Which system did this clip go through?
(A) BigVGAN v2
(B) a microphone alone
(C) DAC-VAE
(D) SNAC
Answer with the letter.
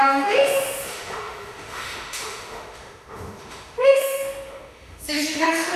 C